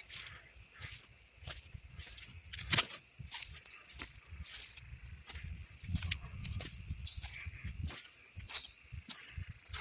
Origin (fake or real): fake